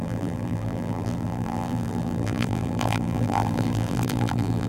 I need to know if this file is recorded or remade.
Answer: remade